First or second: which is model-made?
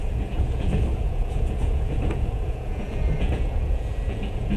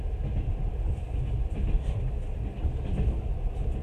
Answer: first